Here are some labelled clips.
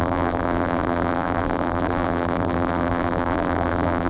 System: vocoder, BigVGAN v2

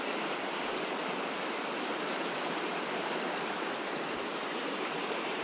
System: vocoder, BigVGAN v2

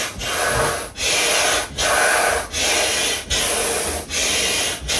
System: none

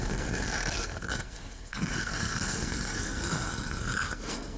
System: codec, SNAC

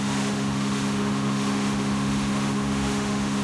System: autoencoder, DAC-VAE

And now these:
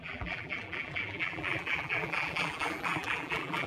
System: vocoder, BigVGAN v2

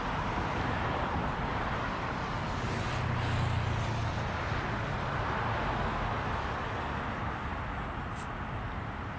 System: none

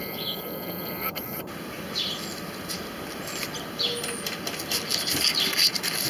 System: none